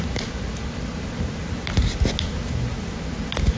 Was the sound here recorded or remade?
recorded